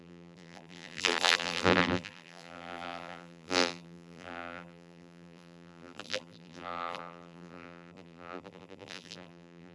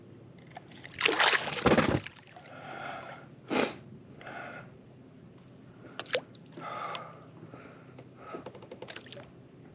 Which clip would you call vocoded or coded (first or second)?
first